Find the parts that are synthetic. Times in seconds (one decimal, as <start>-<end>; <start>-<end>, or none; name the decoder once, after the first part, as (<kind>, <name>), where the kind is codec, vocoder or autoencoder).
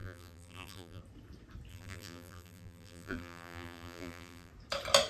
0.0-1.0 (vocoder, BigVGAN v2); 1.7-4.5